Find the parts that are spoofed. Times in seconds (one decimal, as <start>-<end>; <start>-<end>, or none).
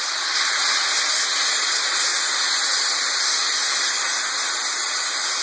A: none